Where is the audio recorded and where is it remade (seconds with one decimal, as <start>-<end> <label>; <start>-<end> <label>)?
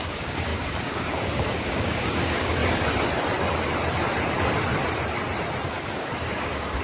0.0-2.6 remade; 2.6-5.7 recorded; 5.7-6.8 remade